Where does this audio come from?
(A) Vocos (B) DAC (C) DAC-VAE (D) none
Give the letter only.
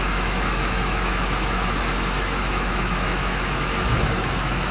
C